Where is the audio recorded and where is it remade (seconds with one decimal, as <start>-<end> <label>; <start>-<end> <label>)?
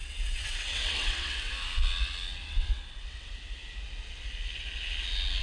0.0-1.5 remade; 1.5-2.4 recorded; 2.4-3.3 remade; 3.3-5.4 recorded